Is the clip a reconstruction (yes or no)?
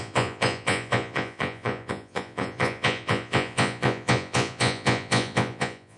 yes